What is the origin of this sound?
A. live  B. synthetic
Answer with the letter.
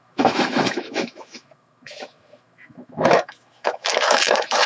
B